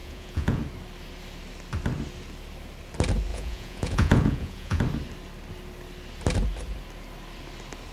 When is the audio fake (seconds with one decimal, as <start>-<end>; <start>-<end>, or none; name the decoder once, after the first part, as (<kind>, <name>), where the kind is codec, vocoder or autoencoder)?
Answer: 0.0-0.6 (vocoder, Vocos); 3.3-4.8